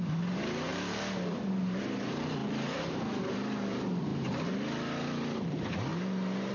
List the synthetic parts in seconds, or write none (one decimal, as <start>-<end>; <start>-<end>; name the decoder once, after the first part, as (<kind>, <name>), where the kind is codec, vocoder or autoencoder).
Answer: 0.0-6.5 (vocoder, BigVGAN v2)